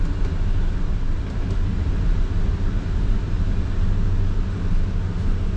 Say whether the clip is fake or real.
real